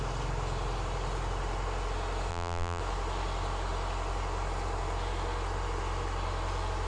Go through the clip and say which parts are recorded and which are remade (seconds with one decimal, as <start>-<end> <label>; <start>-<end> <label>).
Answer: 0.0-2.3 recorded; 2.3-2.8 remade; 2.8-6.9 recorded